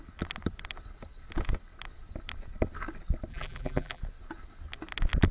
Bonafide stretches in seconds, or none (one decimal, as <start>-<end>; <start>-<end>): 0.0-3.3; 4.0-5.3